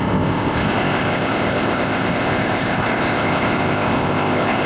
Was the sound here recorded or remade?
remade